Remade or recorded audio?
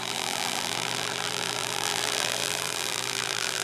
remade